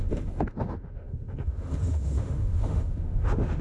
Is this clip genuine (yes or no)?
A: no